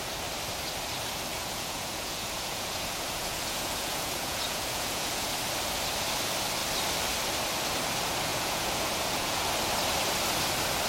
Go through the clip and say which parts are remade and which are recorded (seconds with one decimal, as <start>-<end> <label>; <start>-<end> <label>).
0.0-1.3 recorded; 1.3-5.4 remade; 5.4-8.3 recorded; 8.3-9.5 remade; 9.5-10.9 recorded